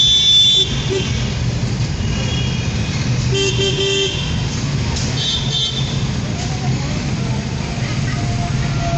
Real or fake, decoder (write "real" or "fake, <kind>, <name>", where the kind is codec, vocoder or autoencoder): real